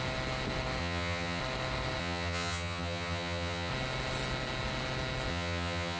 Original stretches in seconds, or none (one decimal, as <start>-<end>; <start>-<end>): 0.0-0.8; 1.4-2.0; 3.7-5.3